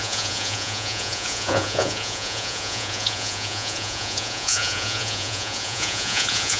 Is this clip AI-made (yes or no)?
yes